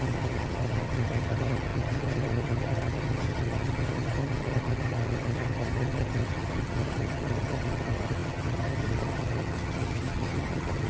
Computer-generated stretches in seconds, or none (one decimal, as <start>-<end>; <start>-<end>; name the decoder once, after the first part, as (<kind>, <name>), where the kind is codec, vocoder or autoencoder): 0.0-10.9 (vocoder, HiFi-GAN)